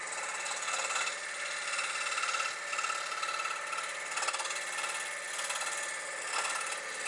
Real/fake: real